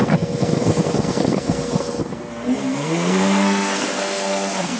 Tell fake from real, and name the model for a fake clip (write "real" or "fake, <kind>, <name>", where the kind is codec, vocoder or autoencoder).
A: fake, codec, SNAC